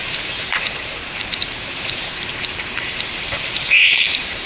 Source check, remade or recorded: remade